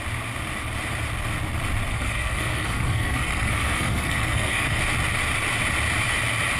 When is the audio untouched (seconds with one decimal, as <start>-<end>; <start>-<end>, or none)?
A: 0.0-1.9; 4.8-6.6